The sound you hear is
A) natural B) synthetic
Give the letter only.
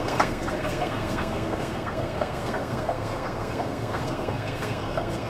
B